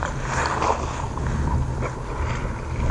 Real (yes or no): yes